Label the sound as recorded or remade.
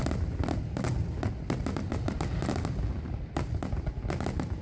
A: recorded